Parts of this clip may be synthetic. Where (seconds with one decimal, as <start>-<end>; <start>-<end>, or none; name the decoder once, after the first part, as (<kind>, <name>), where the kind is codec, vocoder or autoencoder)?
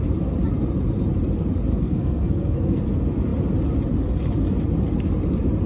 1.7-2.8 (codec, SNAC)